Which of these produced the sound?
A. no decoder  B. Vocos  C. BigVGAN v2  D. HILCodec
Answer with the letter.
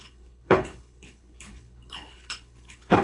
D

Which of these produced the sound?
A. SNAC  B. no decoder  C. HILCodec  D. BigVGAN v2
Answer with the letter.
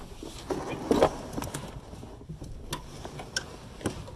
B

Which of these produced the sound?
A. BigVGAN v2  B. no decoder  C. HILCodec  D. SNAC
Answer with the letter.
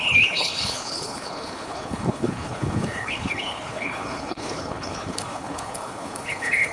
C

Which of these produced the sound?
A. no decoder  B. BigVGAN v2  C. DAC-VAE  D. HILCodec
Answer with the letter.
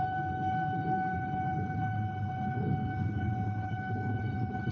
D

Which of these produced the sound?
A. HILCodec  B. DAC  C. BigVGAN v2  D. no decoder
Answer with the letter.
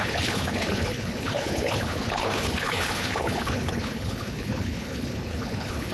A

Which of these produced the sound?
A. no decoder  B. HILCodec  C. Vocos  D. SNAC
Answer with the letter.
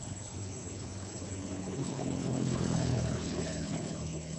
B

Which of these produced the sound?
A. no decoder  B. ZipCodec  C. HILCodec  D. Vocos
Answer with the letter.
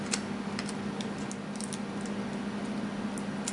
A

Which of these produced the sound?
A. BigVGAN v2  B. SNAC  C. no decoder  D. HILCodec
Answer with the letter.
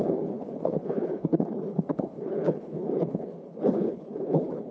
D